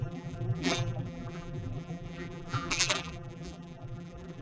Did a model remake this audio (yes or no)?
yes